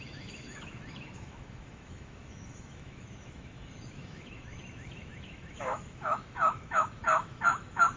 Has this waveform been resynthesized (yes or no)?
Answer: yes